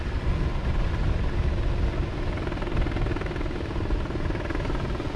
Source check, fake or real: real